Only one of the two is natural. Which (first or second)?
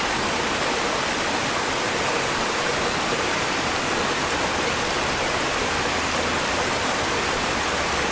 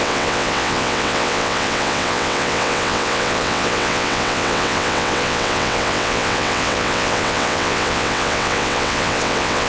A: first